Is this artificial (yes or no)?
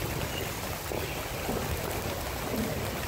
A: no